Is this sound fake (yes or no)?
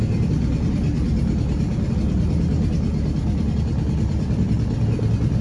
no